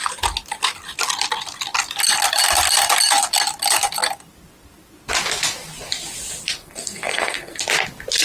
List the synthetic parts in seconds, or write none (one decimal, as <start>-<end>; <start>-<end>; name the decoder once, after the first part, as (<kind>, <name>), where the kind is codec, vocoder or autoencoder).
6.6-7.6 (codec, SNAC)